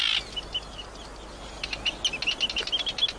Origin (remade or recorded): recorded